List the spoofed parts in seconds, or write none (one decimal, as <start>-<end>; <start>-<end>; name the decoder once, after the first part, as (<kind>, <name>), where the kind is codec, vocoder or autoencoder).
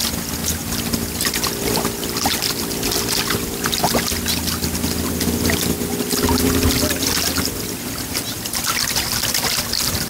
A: none